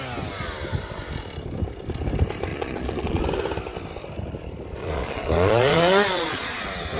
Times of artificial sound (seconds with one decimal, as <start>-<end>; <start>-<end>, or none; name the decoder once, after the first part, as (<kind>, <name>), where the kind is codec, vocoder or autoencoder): 2.5-3.2 (vocoder, Vocos); 4.8-6.6